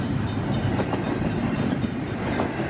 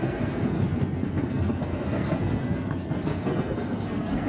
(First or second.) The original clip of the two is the first